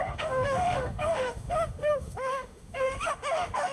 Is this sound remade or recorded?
remade